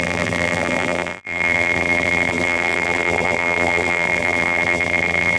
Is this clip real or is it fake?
fake